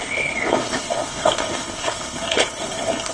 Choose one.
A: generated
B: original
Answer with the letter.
A